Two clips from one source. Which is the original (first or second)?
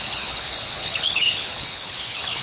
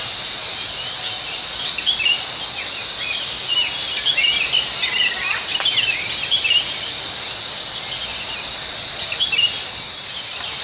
second